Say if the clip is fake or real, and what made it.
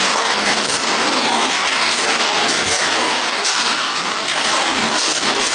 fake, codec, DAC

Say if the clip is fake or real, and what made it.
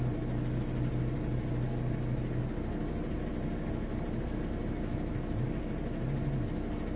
real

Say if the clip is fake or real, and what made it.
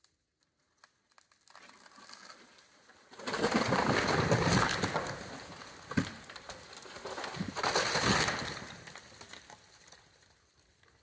real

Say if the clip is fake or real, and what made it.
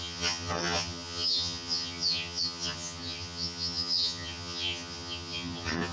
fake, vocoder, HiFi-GAN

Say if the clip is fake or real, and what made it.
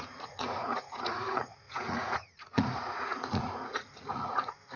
fake, vocoder, Vocos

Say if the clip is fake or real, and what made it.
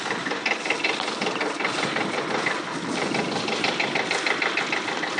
real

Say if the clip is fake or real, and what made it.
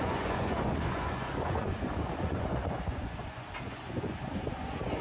fake, vocoder, Vocos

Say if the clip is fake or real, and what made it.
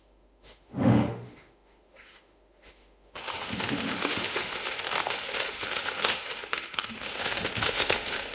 fake, autoencoder, DAC-VAE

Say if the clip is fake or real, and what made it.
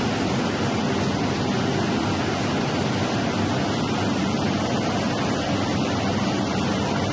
real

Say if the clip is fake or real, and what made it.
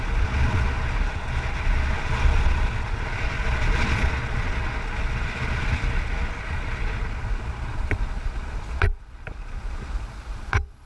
fake, vocoder, Vocos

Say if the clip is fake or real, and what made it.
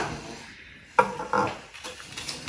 real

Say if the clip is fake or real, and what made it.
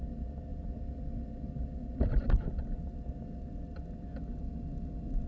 real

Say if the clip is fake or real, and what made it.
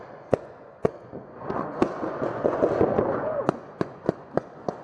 fake, vocoder, Vocos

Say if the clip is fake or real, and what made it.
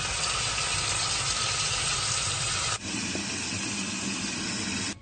real